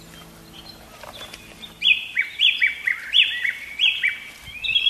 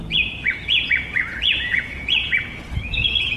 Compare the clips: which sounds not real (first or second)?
second